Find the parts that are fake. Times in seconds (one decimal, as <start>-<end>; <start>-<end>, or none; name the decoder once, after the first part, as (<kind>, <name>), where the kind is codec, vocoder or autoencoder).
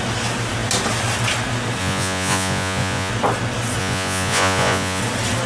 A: 1.8-3.1 (vocoder, Vocos); 3.8-5.0